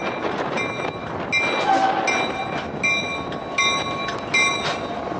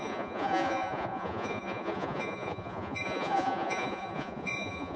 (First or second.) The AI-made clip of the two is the second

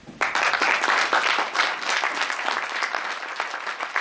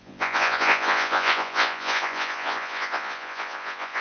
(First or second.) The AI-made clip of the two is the second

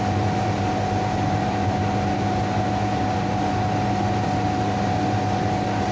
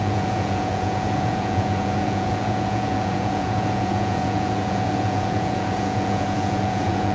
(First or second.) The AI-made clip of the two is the second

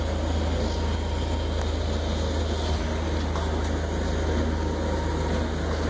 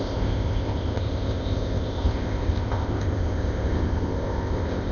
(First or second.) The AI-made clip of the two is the second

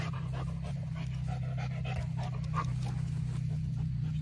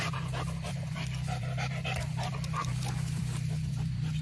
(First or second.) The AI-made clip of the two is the second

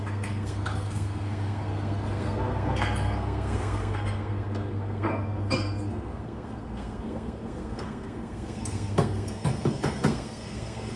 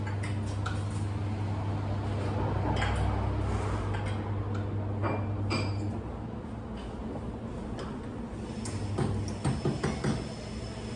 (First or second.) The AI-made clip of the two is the first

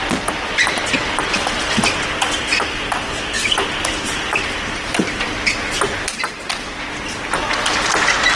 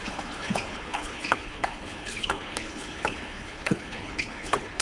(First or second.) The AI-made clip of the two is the second